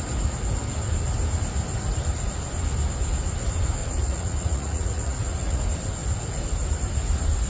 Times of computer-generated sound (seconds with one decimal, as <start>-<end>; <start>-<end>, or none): 3.8-5.6